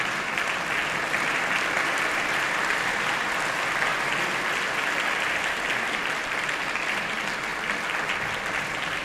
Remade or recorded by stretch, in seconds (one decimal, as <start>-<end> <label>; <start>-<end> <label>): 0.0-3.9 remade; 3.9-4.8 recorded; 4.8-7.5 remade; 7.5-8.6 recorded; 8.6-9.0 remade